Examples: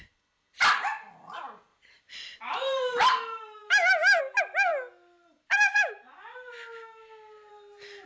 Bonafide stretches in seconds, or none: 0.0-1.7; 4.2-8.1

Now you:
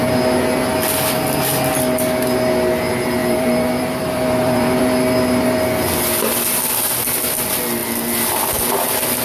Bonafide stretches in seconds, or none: 0.0-3.2; 4.8-9.2

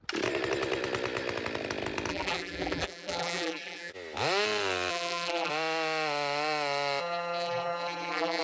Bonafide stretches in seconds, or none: 0.0-2.1; 3.9-4.9; 5.5-7.0

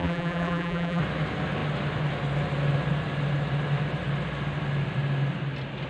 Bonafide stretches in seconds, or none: 1.0-5.9

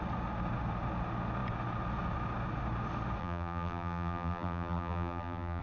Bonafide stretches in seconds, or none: 0.0-3.2

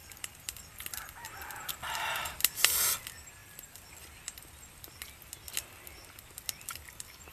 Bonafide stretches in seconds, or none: 1.7-3.4; 4.0-7.3

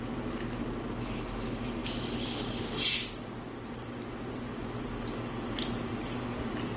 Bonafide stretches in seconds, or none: 0.0-6.8

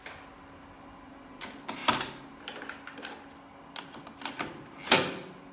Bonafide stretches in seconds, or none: 0.0-1.8; 2.4-5.5